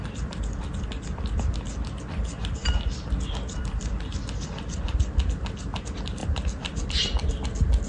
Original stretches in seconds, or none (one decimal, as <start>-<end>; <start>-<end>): 0.0-7.9